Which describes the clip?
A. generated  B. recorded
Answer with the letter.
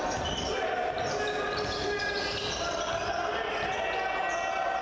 B